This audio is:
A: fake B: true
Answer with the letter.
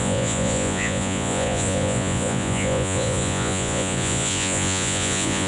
A